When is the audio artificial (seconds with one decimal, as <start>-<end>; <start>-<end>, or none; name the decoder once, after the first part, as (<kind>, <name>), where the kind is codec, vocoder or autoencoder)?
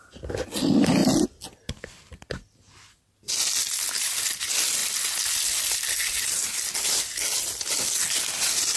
none